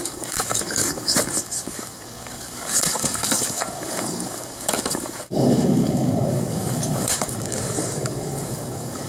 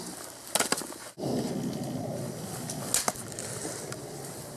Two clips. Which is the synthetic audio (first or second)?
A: first